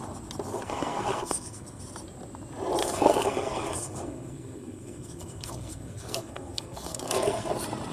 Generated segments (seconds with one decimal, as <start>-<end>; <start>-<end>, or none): 0.5-1.8; 2.8-7.5